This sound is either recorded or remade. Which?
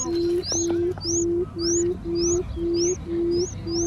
recorded